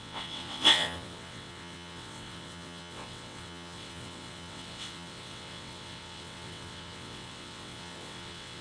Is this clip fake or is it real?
fake